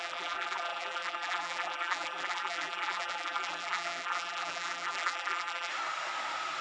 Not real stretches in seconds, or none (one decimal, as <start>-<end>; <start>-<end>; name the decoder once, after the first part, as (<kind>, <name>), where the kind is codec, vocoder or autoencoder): 0.0-5.7 (vocoder, BigVGAN v2)